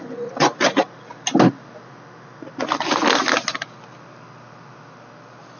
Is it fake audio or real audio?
real